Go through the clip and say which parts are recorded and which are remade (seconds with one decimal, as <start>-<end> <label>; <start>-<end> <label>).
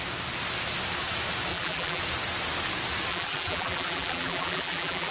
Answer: 0.0-1.5 recorded; 1.5-2.0 remade; 2.0-3.1 recorded; 3.1-5.1 remade